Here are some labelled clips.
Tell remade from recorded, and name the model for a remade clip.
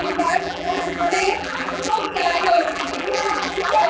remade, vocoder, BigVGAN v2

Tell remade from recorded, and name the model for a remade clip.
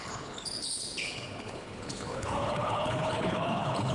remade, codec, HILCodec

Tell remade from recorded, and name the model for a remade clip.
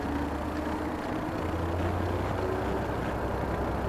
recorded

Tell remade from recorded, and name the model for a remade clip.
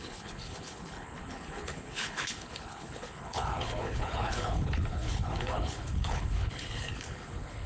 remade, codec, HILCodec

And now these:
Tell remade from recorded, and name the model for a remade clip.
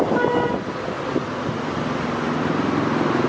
recorded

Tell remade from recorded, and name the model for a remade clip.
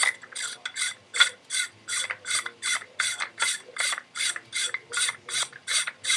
recorded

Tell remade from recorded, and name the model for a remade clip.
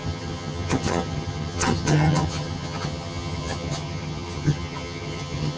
remade, vocoder, HiFi-GAN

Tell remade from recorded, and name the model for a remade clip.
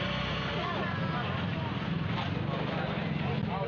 recorded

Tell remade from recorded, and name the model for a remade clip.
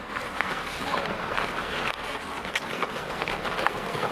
remade, codec, SNAC